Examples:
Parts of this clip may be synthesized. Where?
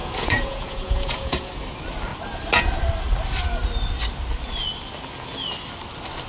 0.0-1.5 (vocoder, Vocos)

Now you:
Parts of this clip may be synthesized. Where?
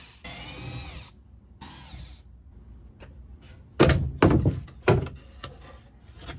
none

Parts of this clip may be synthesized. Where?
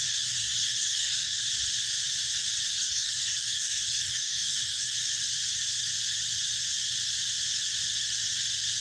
0.0-1.4 (codec, DAC); 2.7-4.9